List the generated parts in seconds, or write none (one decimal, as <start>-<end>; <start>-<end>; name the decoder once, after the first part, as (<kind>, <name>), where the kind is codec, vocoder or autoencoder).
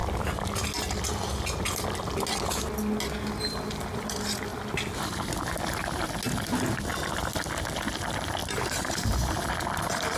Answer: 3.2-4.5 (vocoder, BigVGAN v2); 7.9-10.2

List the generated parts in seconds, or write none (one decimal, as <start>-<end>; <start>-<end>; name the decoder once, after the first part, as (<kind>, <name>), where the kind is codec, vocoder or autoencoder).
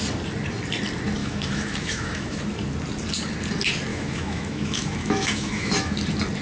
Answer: 1.2-2.4 (autoencoder, DAC-VAE); 3.9-5.9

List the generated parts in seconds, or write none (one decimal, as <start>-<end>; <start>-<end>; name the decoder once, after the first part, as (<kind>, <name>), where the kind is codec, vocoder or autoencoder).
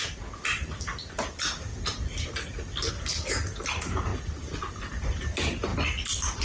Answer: none